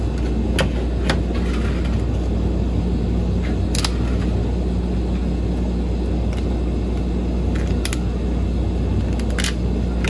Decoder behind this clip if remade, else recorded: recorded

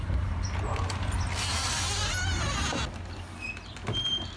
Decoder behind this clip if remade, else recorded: recorded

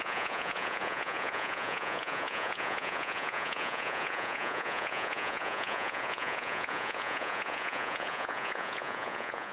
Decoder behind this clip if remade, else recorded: remade, vocoder, Vocos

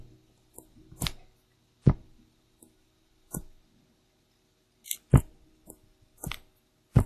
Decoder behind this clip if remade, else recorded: recorded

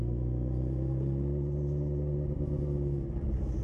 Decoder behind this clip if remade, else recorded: recorded